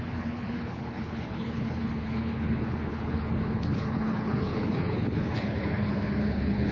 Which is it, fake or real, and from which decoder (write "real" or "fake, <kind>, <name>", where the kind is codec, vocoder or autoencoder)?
fake, codec, HILCodec